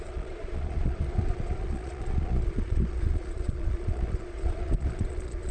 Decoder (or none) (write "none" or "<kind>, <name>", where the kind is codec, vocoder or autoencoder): vocoder, Vocos